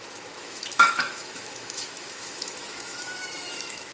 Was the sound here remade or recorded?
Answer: remade